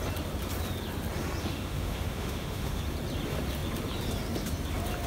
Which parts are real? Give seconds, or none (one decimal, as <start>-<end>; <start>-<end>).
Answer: 0.0-1.4; 2.8-5.1